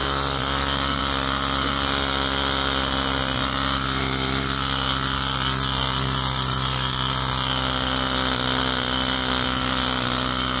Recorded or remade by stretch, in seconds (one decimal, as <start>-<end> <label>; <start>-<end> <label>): 0.0-10.6 recorded